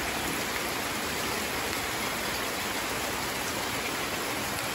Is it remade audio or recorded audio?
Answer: recorded